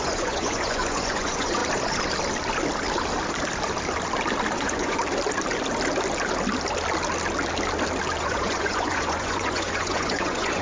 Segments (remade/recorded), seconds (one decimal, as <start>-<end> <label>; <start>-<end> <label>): 0.0-1.6 remade; 1.6-4.6 recorded; 4.6-5.0 remade; 5.0-8.2 recorded; 8.2-10.6 remade